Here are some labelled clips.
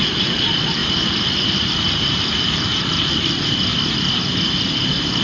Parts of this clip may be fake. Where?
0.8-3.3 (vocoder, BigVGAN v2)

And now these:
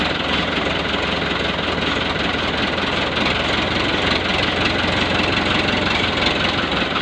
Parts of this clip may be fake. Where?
none

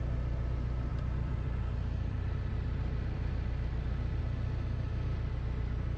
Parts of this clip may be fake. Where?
0.9-4.2 (vocoder, BigVGAN v2)

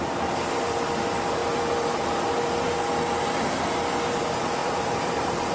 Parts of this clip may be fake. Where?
4.6-5.5 (vocoder, BigVGAN v2)

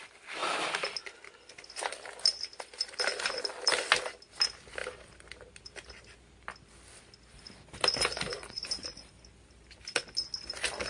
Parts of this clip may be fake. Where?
4.8-5.6 (vocoder, BigVGAN v2); 8.3-9.1

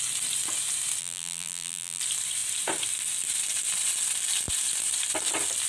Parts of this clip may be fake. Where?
1.0-2.0 (vocoder, BigVGAN v2)

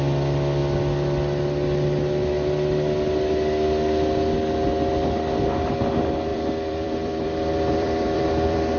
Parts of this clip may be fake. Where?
6.3-8.8 (vocoder, BigVGAN v2)